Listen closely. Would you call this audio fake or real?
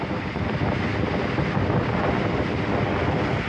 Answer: real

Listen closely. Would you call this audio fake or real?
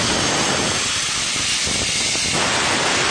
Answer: real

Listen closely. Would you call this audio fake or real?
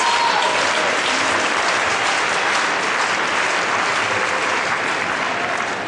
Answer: real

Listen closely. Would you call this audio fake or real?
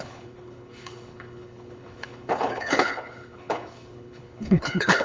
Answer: fake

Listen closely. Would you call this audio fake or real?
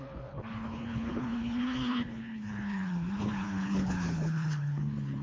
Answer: fake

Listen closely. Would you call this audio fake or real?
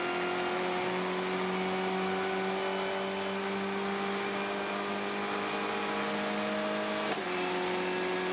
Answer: real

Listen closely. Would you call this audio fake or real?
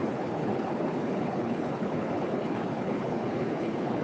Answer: fake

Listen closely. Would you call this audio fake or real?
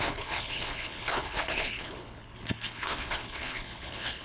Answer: fake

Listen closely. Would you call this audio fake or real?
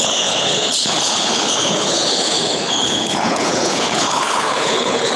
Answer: fake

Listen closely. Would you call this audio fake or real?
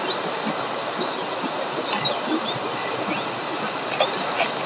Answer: real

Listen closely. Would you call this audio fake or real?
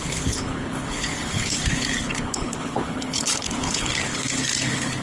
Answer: fake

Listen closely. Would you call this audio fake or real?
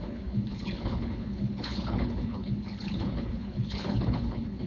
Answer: fake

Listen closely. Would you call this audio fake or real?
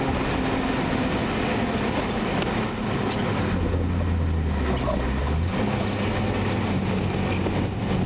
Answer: real